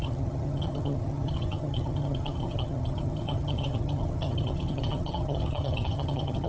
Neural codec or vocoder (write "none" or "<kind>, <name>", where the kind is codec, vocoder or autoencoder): vocoder, HiFi-GAN